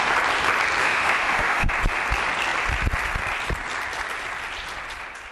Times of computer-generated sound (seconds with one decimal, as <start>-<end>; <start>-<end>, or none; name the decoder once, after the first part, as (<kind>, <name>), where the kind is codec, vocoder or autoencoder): 0.8-1.7 (autoencoder, DAC-VAE)